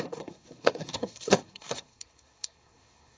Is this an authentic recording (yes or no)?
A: no